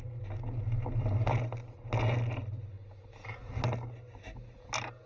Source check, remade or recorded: recorded